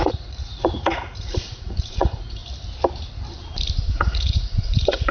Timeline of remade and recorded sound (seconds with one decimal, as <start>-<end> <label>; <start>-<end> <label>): 0.0-2.4 remade; 2.4-3.9 recorded; 3.9-5.1 remade